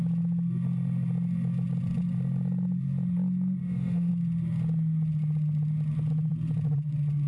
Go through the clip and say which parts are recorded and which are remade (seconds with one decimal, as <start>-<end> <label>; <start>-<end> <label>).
0.0-3.6 recorded; 3.6-4.1 remade; 4.1-7.3 recorded